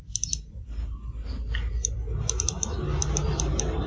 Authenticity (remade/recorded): recorded